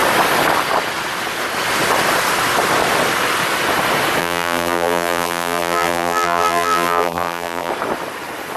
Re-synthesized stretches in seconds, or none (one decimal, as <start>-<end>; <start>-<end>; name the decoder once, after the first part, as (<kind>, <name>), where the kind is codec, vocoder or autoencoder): 4.2-7.7 (vocoder, BigVGAN v2)